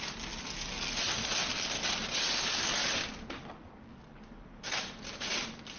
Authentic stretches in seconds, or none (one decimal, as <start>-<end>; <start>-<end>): 0.0-5.8